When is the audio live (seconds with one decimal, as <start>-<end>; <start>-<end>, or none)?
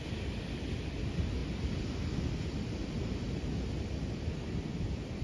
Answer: 0.0-5.2